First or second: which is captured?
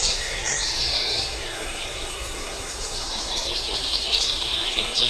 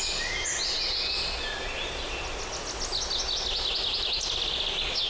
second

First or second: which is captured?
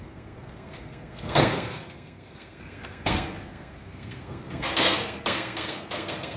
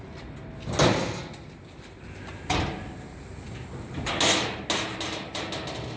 second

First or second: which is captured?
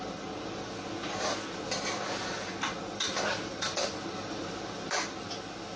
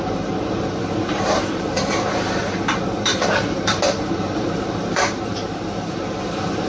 first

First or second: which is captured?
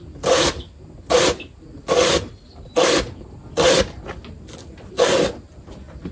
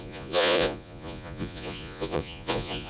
first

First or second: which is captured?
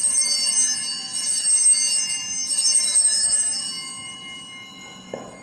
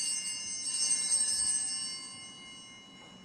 second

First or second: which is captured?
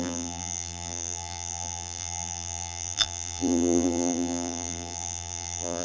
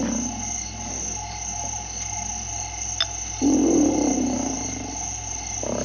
second